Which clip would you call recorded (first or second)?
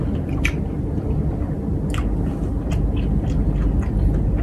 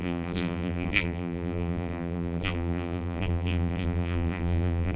first